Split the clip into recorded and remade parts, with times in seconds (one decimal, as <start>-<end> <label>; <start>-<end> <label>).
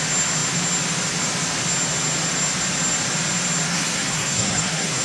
0.0-3.7 recorded; 3.7-5.0 remade